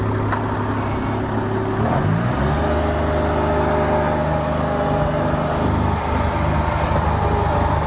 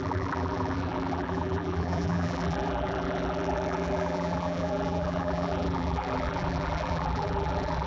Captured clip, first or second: first